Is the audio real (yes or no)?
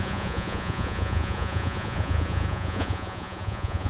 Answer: no